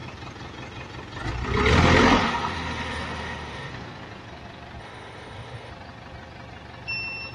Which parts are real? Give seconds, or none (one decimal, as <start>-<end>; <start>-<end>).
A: 0.0-2.2; 3.7-4.8; 5.7-7.3